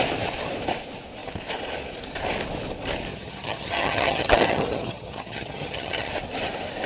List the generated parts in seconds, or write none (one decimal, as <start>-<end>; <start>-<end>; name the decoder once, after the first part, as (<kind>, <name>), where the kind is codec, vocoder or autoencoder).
3.1-6.1 (vocoder, HiFi-GAN)